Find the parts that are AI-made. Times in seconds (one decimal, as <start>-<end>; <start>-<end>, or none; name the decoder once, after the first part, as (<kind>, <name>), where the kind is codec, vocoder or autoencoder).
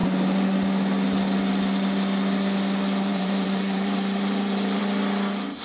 3.1-4.8 (vocoder, BigVGAN v2)